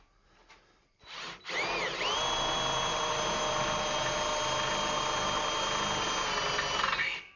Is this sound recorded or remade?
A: recorded